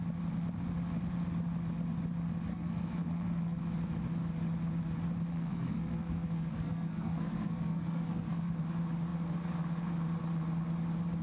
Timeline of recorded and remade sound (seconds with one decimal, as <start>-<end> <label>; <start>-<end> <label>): 0.0-2.5 recorded; 2.5-3.6 remade; 3.6-5.3 recorded; 5.3-8.6 remade; 8.6-11.2 recorded

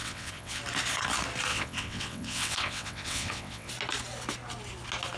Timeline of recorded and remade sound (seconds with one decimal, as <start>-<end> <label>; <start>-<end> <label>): 0.0-0.6 remade; 0.6-1.5 recorded; 1.5-3.7 remade; 3.7-5.2 recorded

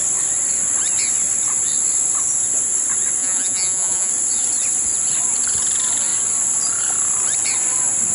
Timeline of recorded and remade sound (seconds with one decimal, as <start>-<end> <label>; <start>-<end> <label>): 0.0-3.2 recorded; 3.2-4.1 remade; 4.1-8.1 recorded

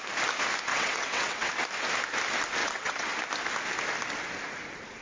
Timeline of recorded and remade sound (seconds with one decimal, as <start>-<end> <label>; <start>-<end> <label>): 0.0-0.7 recorded; 0.7-1.5 remade; 1.5-2.6 recorded; 2.6-3.1 remade; 3.1-5.0 recorded

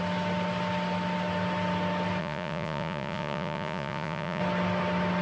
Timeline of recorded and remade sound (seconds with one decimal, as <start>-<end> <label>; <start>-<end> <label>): 0.0-2.2 recorded; 2.2-4.4 remade; 4.4-5.2 recorded

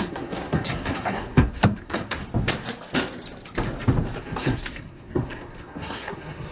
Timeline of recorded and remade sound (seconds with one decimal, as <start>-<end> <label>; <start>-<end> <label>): 0.0-2.2 remade; 2.2-4.2 recorded; 4.2-6.5 remade

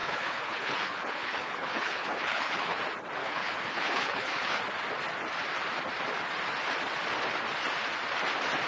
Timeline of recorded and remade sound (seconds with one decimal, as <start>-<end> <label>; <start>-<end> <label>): 0.0-2.8 remade; 2.8-3.2 recorded; 3.2-4.6 remade; 4.6-8.7 recorded

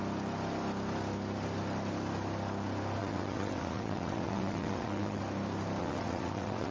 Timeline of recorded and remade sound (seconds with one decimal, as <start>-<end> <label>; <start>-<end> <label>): 0.0-3.0 recorded; 3.0-5.2 remade; 5.2-5.8 recorded; 5.8-6.7 remade